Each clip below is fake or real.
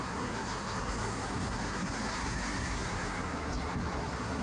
fake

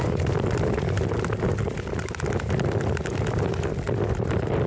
real